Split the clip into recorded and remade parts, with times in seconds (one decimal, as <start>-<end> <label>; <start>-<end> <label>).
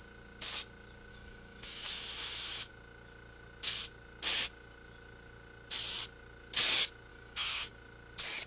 0.0-1.1 recorded; 1.1-2.7 remade; 2.7-7.1 recorded; 7.1-7.7 remade; 7.7-8.5 recorded